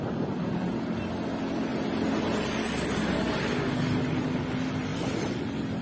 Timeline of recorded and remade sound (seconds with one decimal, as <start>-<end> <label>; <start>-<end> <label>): 0.0-4.9 recorded; 4.9-5.8 remade